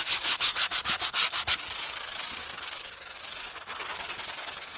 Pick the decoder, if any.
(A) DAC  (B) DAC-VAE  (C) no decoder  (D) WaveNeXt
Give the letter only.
A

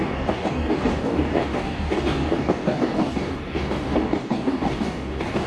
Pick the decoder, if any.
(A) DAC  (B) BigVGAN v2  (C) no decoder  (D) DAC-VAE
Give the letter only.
A